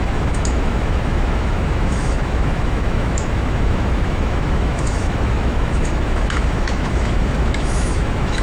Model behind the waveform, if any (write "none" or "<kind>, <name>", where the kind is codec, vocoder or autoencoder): autoencoder, DAC-VAE